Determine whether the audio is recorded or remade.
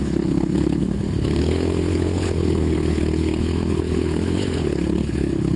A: remade